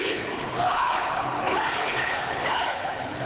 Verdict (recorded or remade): remade